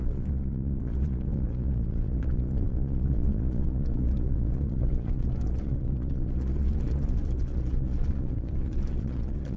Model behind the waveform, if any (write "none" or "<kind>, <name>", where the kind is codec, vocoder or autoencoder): vocoder, Vocos